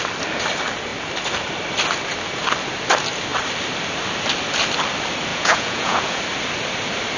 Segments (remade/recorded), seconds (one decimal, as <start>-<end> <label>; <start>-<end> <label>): 0.0-5.3 recorded; 5.3-6.2 remade; 6.2-7.2 recorded